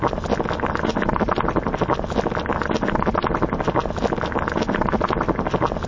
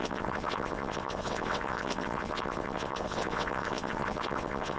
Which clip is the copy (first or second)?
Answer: second